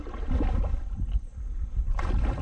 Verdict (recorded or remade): recorded